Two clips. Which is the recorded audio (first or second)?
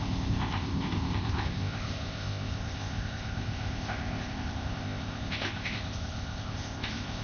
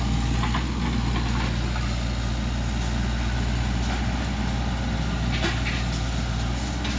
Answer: second